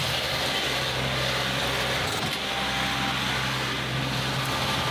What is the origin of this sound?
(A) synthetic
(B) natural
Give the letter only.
B